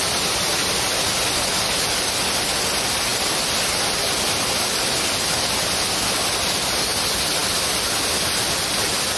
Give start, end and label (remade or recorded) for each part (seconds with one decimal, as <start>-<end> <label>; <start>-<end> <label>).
0.0-9.2 recorded